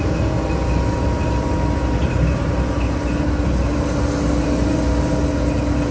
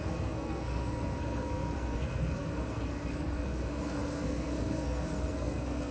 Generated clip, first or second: second